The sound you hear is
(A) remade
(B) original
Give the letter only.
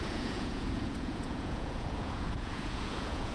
A